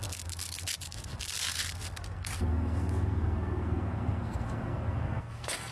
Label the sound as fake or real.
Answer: fake